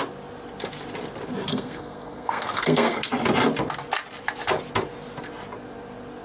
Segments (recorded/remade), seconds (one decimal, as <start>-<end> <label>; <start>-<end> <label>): 0.0-1.5 recorded; 1.5-3.1 remade; 3.1-6.2 recorded